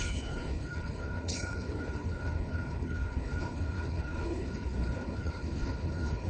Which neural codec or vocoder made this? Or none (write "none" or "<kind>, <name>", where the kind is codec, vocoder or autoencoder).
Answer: codec, HILCodec